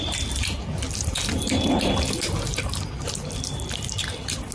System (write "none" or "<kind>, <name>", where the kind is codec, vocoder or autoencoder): none